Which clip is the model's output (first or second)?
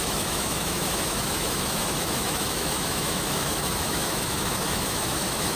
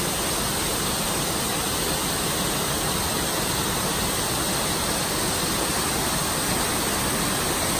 first